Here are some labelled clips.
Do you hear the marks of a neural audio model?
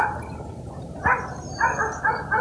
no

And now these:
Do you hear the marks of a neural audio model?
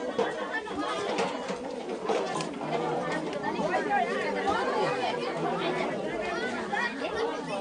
yes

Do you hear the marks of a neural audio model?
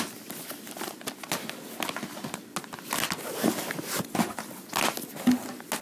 no